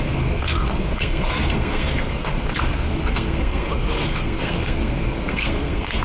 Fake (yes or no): yes